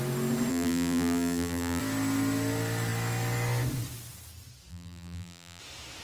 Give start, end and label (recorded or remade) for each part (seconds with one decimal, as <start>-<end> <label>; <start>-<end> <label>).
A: 0.0-0.5 recorded; 0.5-1.8 remade; 1.8-4.7 recorded; 4.7-5.6 remade; 5.6-6.0 recorded